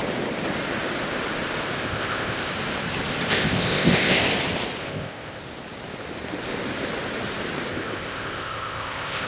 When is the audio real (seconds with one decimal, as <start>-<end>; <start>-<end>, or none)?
0.0-1.8; 2.5-3.3; 4.2-4.8; 5.4-7.7